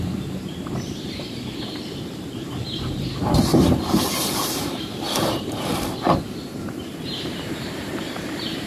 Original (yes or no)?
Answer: no